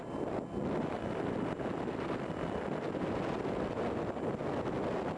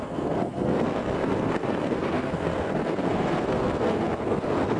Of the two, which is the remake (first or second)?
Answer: second